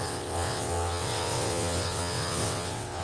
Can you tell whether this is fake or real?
fake